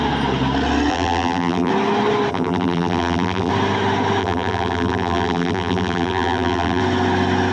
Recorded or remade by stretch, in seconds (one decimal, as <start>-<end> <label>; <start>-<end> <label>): 0.0-0.9 recorded; 0.9-1.7 remade; 1.7-2.3 recorded; 2.3-3.5 remade; 3.5-4.2 recorded; 4.2-6.8 remade; 6.8-7.5 recorded